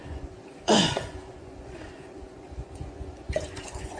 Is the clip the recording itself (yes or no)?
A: no